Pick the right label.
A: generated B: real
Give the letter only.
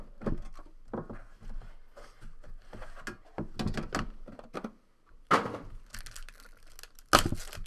B